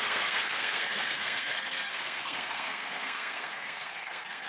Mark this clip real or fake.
fake